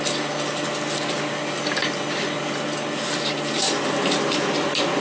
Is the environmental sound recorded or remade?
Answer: recorded